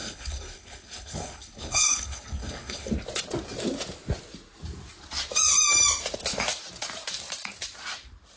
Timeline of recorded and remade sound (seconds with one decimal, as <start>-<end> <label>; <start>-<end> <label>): 0.0-2.9 remade; 2.9-8.4 recorded